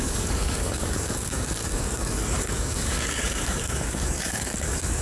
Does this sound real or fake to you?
fake